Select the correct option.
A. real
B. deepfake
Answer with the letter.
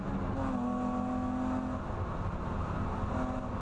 A